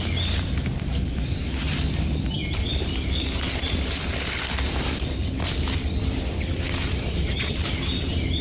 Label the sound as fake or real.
real